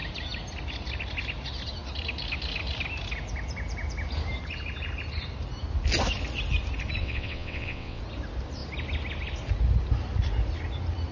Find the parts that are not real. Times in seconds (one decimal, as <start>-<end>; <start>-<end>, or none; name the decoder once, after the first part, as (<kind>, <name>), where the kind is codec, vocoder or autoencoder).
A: 7.0-8.0 (vocoder, WaveNeXt)